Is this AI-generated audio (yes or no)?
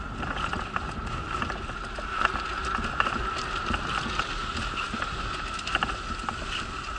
no